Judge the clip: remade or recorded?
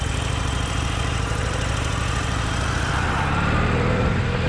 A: remade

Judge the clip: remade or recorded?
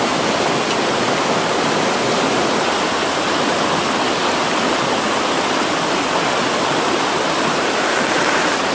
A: recorded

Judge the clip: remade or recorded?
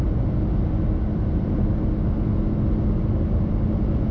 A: recorded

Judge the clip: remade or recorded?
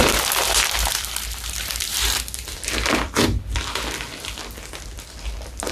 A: remade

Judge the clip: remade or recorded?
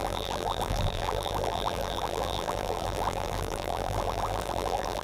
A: remade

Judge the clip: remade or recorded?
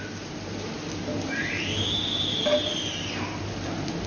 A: recorded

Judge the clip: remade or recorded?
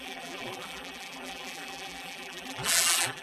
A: remade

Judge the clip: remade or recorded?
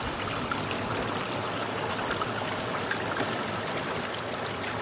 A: recorded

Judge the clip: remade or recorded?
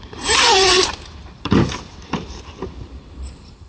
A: remade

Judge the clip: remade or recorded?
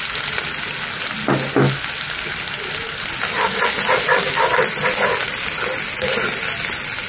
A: recorded